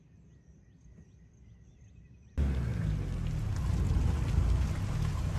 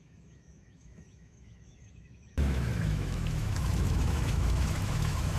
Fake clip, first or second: second